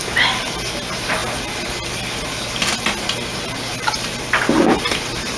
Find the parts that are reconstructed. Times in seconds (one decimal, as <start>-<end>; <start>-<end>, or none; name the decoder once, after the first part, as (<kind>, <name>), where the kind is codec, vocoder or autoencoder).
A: none